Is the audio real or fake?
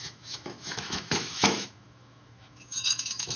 fake